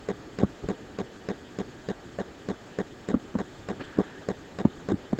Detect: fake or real real